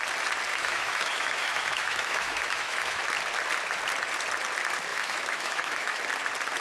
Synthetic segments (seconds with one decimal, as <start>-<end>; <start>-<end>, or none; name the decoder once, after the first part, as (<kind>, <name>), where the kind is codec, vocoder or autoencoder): 0.5-3.0 (autoencoder, DAC-VAE); 4.9-6.0

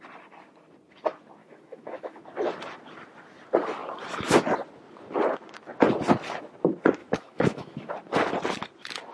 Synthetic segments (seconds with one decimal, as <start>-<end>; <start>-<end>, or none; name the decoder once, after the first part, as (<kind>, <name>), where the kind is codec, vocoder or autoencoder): 1.4-2.2 (autoencoder, DAC-VAE); 7.0-7.9